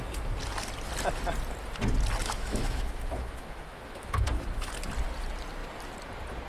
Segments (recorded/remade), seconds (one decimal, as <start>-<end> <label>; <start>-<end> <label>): 0.0-2.2 recorded; 2.2-4.7 remade; 4.7-6.5 recorded